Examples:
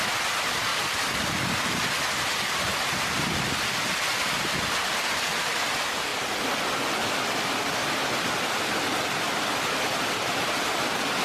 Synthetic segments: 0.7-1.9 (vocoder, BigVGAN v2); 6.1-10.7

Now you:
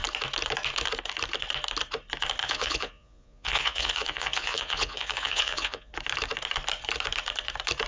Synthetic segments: 2.4-5.9 (vocoder, Vocos)

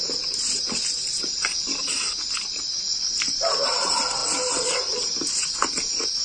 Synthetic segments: 0.0-1.5 (vocoder, BigVGAN v2); 3.2-6.2